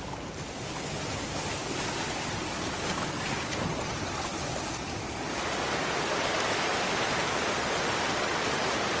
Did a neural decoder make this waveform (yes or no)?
no